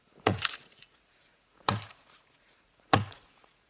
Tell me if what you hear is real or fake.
fake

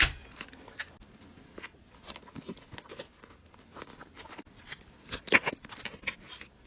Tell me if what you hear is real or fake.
real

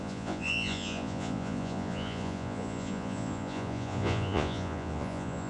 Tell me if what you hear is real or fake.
fake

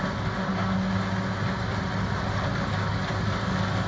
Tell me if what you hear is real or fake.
real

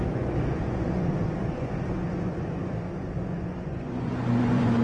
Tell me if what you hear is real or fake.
fake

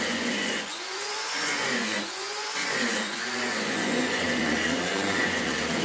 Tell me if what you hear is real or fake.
fake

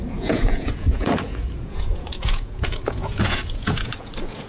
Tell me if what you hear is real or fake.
fake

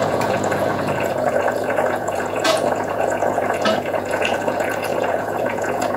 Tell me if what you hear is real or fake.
fake